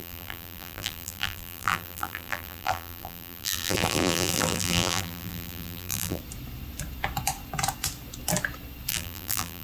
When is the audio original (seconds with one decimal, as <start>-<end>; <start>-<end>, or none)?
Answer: 6.2-8.9